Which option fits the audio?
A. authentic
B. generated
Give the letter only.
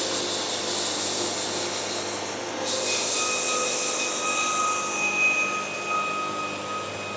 A